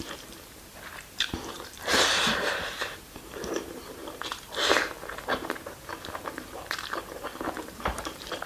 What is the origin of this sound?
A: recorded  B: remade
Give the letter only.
B